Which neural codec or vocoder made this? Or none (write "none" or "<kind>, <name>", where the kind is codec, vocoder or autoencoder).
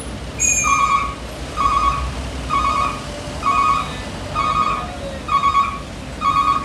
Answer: none